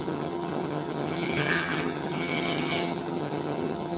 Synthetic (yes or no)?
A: yes